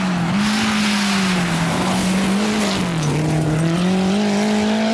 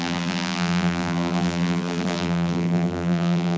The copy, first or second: second